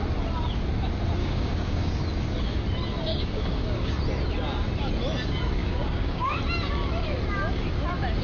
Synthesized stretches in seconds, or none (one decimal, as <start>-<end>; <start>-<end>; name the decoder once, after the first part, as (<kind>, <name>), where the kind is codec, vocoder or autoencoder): 1.2-2.0 (codec, DAC); 3.1-3.9; 5.6-6.4